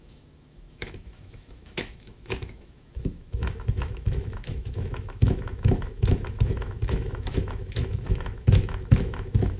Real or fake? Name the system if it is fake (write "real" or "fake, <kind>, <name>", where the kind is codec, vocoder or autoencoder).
fake, autoencoder, DAC-VAE